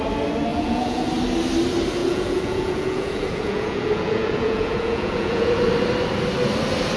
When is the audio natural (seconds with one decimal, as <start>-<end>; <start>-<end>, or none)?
0.0-0.5; 1.1-2.0; 5.7-7.0